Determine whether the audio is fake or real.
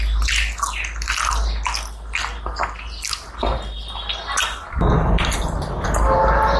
real